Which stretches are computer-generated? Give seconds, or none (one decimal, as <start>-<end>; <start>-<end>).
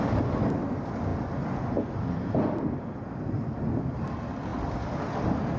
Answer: none